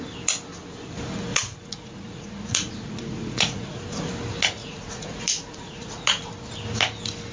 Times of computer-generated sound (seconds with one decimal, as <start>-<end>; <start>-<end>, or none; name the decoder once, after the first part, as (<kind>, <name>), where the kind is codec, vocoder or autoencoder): 1.3-4.1 (vocoder, Vocos); 4.6-6.3